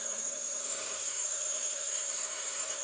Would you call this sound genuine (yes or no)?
no